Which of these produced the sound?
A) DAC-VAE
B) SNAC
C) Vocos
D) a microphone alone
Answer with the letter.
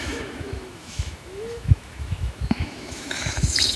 A